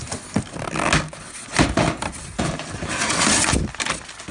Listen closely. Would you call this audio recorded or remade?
recorded